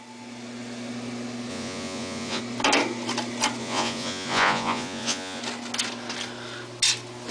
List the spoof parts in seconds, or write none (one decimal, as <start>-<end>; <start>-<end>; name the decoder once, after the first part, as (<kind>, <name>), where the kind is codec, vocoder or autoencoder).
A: 1.5-2.4 (vocoder, Vocos); 3.6-5.4

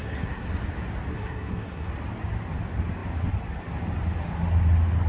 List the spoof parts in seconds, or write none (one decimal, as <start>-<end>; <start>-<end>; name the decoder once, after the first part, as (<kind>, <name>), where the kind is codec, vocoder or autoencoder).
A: 0.0-0.6 (codec, SNAC); 1.1-1.9

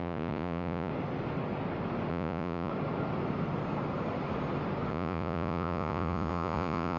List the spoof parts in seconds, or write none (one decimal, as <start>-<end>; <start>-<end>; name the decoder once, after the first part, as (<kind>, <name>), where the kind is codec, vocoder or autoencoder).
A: 0.0-0.9 (vocoder, Vocos); 2.1-2.7; 4.9-7.0

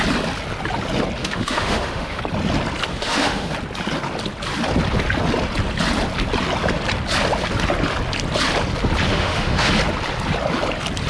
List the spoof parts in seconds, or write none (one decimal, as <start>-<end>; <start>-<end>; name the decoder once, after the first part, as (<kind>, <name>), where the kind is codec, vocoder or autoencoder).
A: 1.2-2.2 (autoencoder, DAC-VAE); 2.9-3.5; 9.1-9.7

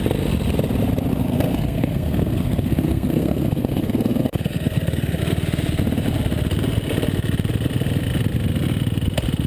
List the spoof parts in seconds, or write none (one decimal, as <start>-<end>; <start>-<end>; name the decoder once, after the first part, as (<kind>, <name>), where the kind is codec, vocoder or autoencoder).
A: 1.1-5.2 (codec, SNAC)

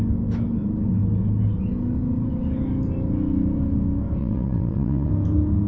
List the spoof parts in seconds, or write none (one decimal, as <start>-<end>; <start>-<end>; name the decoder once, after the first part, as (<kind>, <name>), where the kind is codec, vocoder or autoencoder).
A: 4.2-5.1 (vocoder, WaveNeXt)

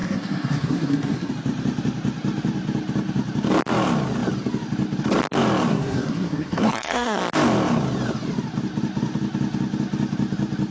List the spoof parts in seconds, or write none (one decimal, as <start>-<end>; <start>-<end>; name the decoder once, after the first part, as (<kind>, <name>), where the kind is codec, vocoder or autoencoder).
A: 0.0-1.3 (codec, SNAC); 5.7-7.2